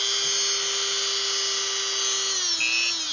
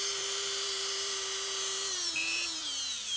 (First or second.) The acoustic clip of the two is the first